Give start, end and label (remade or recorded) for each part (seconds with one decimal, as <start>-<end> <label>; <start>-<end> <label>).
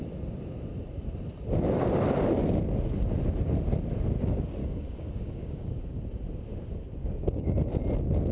0.0-4.6 recorded; 4.6-6.0 remade; 6.0-7.0 recorded; 7.0-7.8 remade; 7.8-8.3 recorded